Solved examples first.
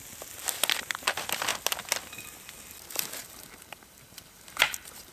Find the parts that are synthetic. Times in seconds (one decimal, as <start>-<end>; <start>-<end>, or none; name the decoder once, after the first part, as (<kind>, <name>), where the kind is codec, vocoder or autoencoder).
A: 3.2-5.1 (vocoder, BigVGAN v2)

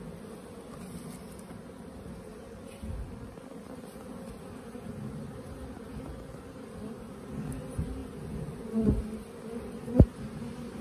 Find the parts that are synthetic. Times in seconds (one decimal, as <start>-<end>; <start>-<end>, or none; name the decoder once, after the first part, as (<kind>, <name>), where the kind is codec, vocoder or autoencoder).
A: none

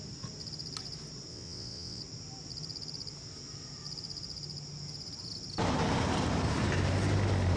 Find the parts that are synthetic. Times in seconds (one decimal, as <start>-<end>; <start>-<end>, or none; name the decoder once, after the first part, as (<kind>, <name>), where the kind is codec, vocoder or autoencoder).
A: 1.3-2.0 (vocoder, WaveNeXt)

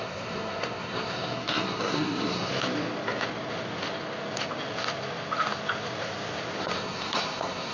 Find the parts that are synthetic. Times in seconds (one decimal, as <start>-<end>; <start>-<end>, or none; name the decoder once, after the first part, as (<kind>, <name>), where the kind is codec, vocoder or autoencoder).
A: 0.0-2.5 (codec, SNAC); 6.6-7.7

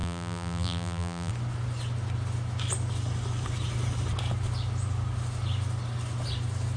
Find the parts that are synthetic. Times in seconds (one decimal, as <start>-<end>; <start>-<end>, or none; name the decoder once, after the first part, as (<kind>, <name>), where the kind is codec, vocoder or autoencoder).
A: 0.0-1.3 (vocoder, BigVGAN v2)

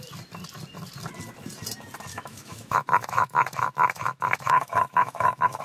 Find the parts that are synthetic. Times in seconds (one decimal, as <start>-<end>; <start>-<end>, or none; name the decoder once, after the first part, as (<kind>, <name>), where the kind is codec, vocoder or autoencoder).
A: 2.1-5.6 (autoencoder, DAC-VAE)

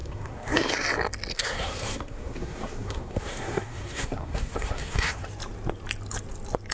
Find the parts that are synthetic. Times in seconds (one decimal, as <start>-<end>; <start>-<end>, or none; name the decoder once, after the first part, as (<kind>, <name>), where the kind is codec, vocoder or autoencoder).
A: 0.0-0.7 (codec, SNAC); 1.3-5.3